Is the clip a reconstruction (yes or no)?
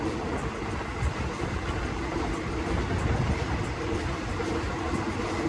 no